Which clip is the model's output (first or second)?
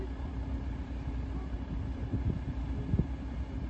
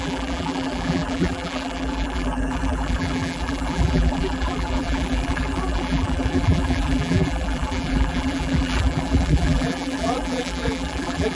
second